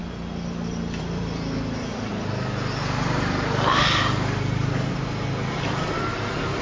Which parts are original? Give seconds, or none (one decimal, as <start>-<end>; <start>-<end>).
0.0-1.0; 2.1-6.1